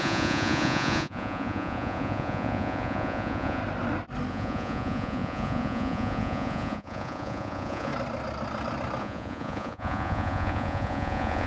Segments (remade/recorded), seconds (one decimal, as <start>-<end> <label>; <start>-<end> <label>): 0.0-3.6 remade; 3.6-4.3 recorded; 4.3-7.9 remade; 7.9-9.0 recorded; 9.0-11.5 remade